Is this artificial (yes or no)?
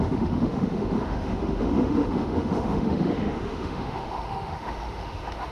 yes